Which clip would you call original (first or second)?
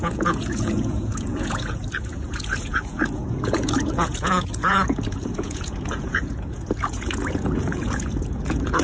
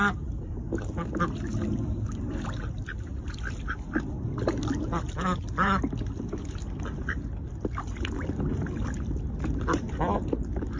second